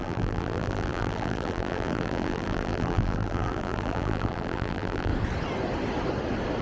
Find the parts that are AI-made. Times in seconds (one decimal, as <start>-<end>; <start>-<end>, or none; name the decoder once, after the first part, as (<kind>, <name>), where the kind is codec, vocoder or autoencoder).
0.0-5.1 (vocoder, BigVGAN v2)